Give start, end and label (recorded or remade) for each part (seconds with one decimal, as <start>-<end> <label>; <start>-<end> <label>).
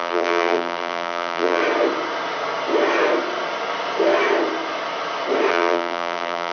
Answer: 0.0-1.6 remade; 1.6-5.5 recorded; 5.5-6.5 remade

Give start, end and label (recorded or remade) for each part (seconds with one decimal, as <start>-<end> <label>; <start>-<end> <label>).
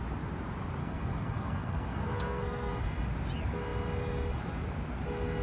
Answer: 0.0-0.8 recorded; 0.8-2.7 remade; 2.7-5.4 recorded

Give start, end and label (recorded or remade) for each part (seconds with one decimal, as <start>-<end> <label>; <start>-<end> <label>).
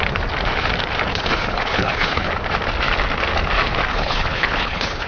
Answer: 0.0-1.1 recorded; 1.1-2.3 remade; 2.3-3.9 recorded; 3.9-5.1 remade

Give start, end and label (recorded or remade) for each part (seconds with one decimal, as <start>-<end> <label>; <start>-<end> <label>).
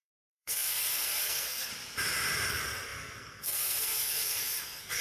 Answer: 0.0-1.7 remade; 1.7-2.5 recorded; 2.5-5.0 remade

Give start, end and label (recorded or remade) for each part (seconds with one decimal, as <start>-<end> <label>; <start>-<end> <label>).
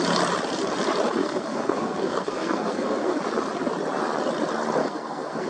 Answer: 0.0-1.2 recorded; 1.2-3.2 remade; 3.2-4.8 recorded; 4.8-5.5 remade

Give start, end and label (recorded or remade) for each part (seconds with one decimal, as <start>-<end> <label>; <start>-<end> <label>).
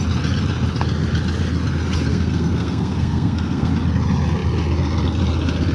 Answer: 0.0-2.1 recorded; 2.1-3.7 remade; 3.7-5.7 recorded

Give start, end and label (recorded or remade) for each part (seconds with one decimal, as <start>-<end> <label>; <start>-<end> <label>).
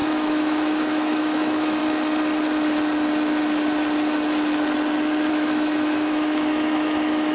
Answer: 0.0-1.8 remade; 1.8-5.3 recorded; 5.3-7.3 remade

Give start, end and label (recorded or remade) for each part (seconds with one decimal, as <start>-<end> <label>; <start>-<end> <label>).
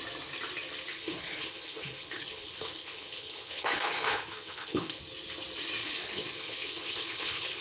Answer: 0.0-0.9 recorded; 0.9-5.0 remade; 5.0-5.8 recorded; 5.8-7.6 remade